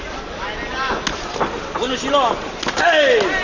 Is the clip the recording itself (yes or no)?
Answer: yes